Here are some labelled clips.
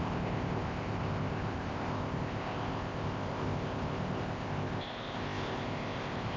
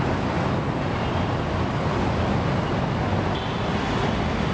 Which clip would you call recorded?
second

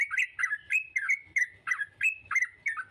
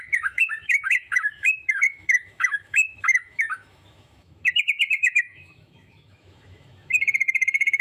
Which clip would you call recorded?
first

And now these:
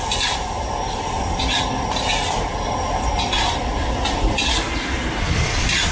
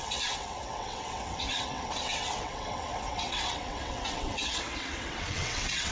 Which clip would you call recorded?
first